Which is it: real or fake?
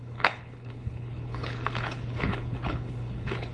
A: fake